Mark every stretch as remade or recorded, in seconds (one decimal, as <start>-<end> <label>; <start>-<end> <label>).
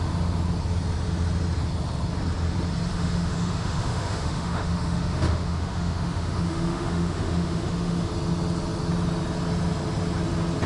0.0-2.9 recorded; 2.9-8.1 remade; 8.1-10.7 recorded